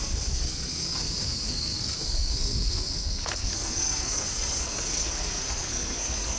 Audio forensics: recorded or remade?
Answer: remade